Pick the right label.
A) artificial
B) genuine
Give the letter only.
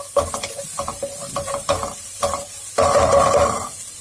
A